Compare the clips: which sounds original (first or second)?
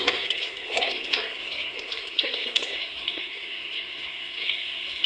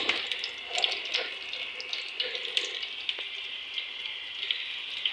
second